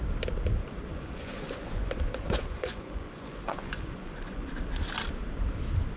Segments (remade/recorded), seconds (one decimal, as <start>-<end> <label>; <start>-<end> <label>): 0.0-0.9 recorded; 0.9-4.5 remade; 4.5-6.0 recorded